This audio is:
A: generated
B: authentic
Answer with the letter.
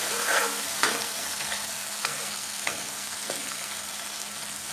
A